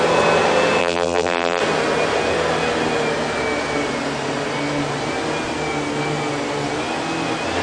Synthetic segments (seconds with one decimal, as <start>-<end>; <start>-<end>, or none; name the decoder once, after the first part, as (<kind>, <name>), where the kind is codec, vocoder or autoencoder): 0.8-1.6 (vocoder, BigVGAN v2)